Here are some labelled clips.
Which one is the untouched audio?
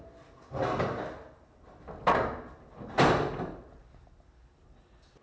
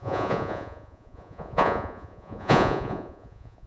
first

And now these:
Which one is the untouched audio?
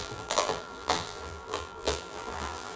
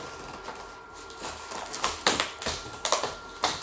second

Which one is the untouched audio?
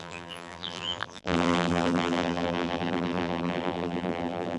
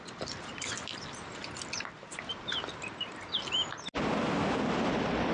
second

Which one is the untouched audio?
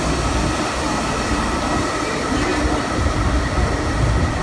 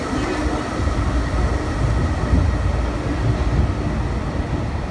second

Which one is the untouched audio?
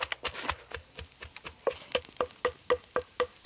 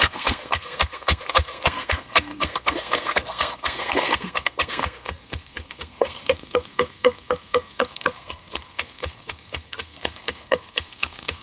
first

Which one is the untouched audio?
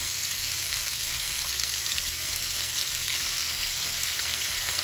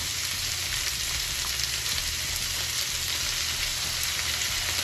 second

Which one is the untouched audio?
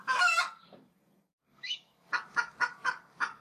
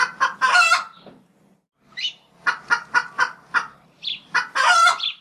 second